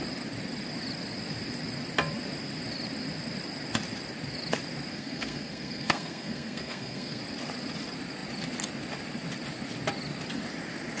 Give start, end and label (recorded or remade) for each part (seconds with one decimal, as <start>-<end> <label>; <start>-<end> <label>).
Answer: 0.0-4.9 recorded; 4.9-7.2 remade; 7.2-11.0 recorded